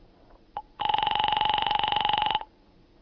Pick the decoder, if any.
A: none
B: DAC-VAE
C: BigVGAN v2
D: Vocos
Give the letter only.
D